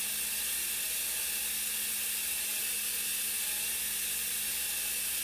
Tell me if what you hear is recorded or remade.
recorded